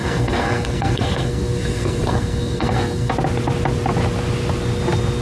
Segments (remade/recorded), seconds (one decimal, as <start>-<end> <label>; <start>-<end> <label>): 0.0-3.1 remade; 3.1-5.2 recorded